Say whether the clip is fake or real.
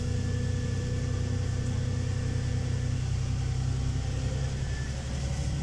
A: real